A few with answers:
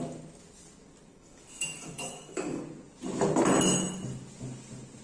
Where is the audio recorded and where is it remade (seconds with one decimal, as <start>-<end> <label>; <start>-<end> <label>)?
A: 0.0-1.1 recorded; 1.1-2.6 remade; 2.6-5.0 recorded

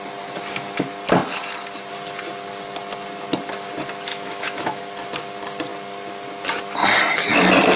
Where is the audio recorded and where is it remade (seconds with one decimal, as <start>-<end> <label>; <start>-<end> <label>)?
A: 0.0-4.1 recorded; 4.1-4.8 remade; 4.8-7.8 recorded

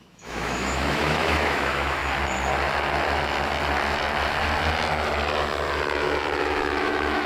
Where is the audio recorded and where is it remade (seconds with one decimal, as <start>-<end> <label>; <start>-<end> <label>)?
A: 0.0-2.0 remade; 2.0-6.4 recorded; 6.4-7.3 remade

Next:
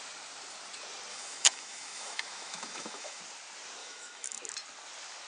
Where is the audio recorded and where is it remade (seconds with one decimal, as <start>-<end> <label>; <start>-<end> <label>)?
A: 0.0-1.1 recorded; 1.1-3.2 remade; 3.2-3.8 recorded; 3.8-4.4 remade; 4.4-5.3 recorded

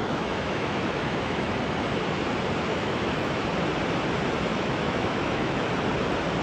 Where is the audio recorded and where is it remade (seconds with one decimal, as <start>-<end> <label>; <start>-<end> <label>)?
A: 0.0-1.6 remade; 1.6-2.7 recorded; 2.7-3.5 remade; 3.5-4.5 recorded; 4.5-5.6 remade; 5.6-6.4 recorded

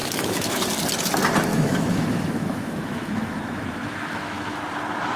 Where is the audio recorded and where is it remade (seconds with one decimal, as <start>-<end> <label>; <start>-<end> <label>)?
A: 0.0-0.6 remade; 0.6-1.5 recorded; 1.5-4.6 remade; 4.6-5.2 recorded